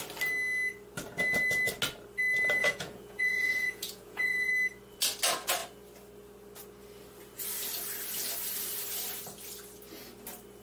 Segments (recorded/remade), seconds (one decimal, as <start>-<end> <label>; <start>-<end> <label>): 0.0-2.6 recorded; 2.6-4.5 remade; 4.5-10.6 recorded

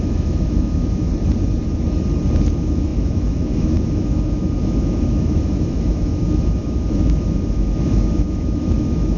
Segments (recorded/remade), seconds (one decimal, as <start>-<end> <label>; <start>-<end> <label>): 0.0-1.1 remade; 1.1-2.5 recorded; 2.5-9.2 remade

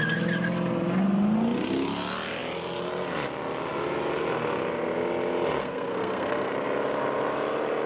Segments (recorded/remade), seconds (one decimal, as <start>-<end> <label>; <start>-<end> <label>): 0.0-5.6 recorded; 5.6-6.5 remade; 6.5-7.9 recorded

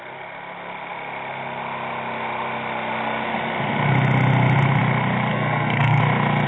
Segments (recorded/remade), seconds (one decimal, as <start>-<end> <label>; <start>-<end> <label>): 0.0-5.3 recorded; 5.3-6.0 remade; 6.0-6.5 recorded

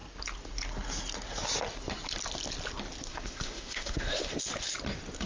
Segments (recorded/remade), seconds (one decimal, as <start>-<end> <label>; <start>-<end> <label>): 0.0-3.1 recorded; 3.1-4.4 remade; 4.4-5.3 recorded

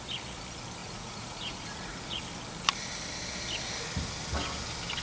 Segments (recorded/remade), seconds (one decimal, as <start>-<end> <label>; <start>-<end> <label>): 0.0-0.8 recorded; 0.8-2.2 remade; 2.2-5.0 recorded

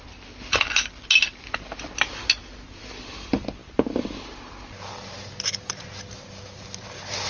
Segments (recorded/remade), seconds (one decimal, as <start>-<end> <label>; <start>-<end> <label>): 0.0-7.3 recorded

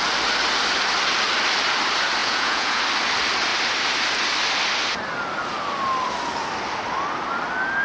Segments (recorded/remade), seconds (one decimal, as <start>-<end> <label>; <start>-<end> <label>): 0.0-2.2 recorded; 2.2-2.8 remade; 2.8-7.8 recorded